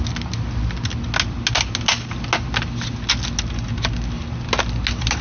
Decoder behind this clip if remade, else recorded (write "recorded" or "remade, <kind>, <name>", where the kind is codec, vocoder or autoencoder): recorded